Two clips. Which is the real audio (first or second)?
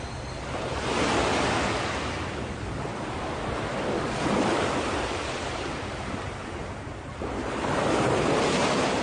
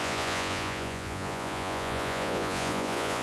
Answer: first